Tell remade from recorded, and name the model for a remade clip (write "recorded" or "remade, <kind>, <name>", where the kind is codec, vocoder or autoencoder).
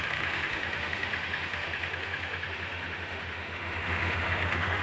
remade, autoencoder, DAC-VAE